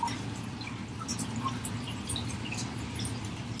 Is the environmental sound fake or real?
real